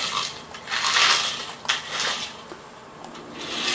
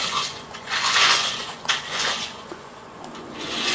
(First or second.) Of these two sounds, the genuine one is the first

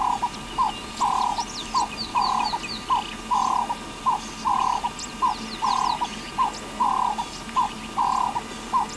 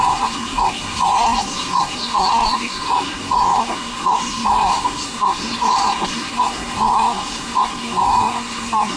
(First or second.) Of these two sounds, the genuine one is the first